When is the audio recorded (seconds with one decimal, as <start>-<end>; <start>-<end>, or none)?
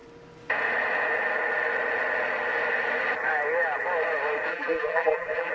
0.0-4.5